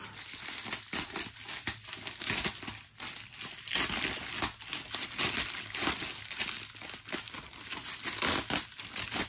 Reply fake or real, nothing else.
real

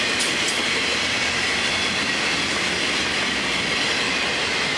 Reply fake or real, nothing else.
real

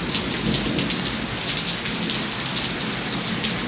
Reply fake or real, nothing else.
real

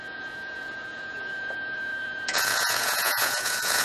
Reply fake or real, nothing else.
fake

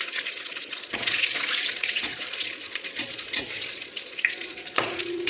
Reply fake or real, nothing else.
fake